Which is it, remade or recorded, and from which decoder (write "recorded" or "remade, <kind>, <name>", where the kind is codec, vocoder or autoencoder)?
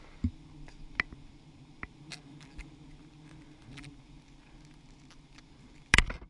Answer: recorded